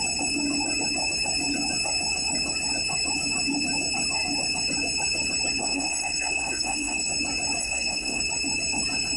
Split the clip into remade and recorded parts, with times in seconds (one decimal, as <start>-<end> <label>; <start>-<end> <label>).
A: 0.0-5.6 recorded; 5.6-7.1 remade; 7.1-7.6 recorded; 7.6-8.2 remade; 8.2-9.2 recorded